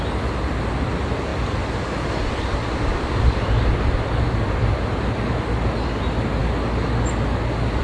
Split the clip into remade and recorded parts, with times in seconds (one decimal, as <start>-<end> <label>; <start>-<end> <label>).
0.0-7.8 recorded